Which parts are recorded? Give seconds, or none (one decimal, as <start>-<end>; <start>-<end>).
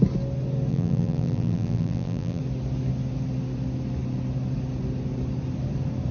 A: 0.0-0.7; 2.4-6.1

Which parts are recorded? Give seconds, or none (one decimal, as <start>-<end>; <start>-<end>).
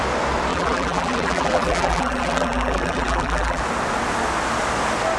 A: 0.0-0.5; 3.6-5.2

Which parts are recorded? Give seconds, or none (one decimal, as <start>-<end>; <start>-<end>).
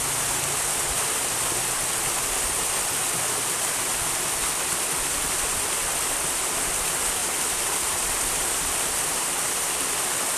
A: 0.0-7.2; 8.1-10.4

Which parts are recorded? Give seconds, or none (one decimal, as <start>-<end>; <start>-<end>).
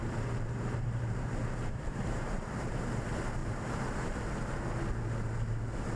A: 2.5-3.4; 4.2-6.0